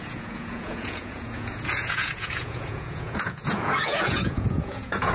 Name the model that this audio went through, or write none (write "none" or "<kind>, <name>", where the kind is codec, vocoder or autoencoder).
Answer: vocoder, Vocos